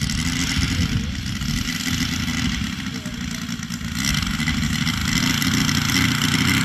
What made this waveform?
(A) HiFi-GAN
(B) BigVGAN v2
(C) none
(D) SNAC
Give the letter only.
C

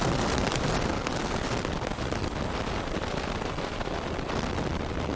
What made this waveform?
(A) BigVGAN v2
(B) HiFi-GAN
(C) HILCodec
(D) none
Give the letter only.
A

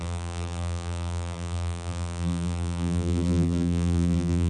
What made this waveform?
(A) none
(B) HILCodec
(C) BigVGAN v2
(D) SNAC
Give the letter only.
C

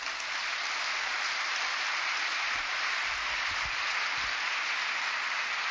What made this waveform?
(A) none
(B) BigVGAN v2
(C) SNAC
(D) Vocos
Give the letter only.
A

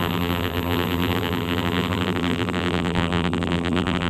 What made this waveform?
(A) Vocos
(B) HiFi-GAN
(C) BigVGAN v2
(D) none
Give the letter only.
C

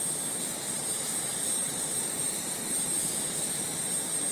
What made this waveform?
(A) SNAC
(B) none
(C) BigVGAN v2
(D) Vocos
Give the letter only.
B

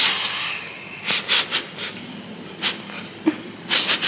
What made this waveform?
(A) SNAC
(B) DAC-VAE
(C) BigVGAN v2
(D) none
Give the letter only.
D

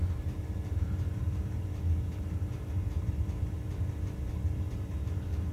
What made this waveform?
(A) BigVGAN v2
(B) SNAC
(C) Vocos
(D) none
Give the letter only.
A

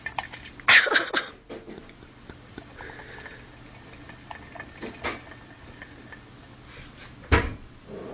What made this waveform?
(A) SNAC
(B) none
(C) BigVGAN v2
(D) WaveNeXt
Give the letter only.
B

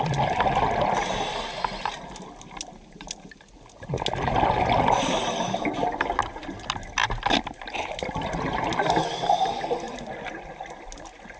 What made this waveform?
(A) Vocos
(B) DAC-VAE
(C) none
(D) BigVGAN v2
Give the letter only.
C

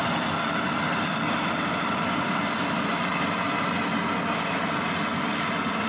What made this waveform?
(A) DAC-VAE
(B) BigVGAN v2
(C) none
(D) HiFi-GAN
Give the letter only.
C